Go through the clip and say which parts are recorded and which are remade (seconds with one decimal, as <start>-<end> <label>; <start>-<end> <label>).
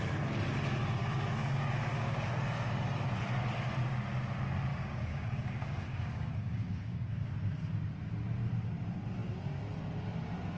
0.0-1.0 recorded; 1.0-2.3 remade; 2.3-4.7 recorded; 4.7-7.3 remade; 7.3-10.6 recorded